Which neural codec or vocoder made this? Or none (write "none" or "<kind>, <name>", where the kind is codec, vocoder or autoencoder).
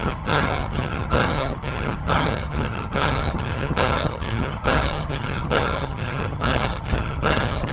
vocoder, HiFi-GAN